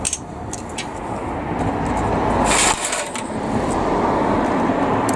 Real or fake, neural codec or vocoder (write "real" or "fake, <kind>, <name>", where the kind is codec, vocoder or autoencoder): fake, vocoder, BigVGAN v2